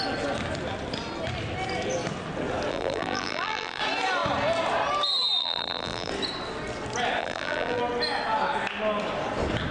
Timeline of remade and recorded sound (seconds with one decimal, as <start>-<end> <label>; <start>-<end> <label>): 0.0-2.7 recorded; 2.7-3.8 remade; 3.8-5.4 recorded; 5.4-6.1 remade; 6.1-7.2 recorded; 7.2-7.8 remade; 7.8-9.7 recorded